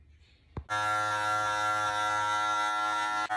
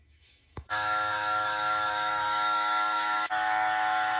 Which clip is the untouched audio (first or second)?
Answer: first